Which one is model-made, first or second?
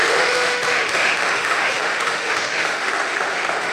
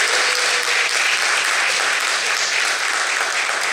first